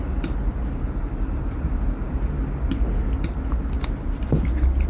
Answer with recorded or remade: recorded